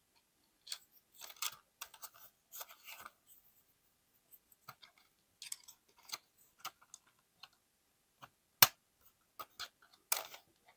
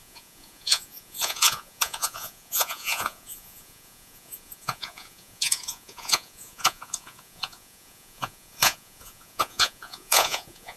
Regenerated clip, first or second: second